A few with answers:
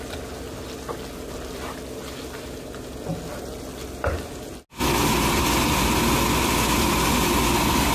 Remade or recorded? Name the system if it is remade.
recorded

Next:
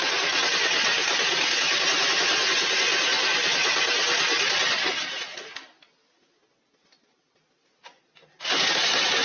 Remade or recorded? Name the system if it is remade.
recorded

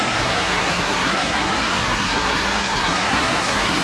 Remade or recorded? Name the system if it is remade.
remade, codec, SNAC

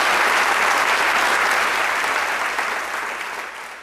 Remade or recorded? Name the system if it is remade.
recorded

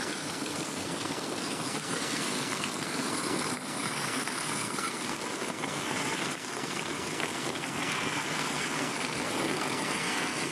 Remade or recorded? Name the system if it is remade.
remade, codec, SNAC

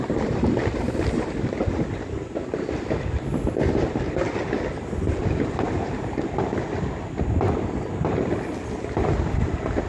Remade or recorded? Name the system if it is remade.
recorded